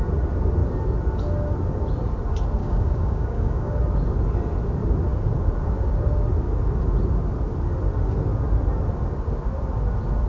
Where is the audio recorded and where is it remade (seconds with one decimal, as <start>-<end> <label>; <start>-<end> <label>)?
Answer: 0.0-2.6 recorded; 2.6-3.8 remade; 3.8-10.3 recorded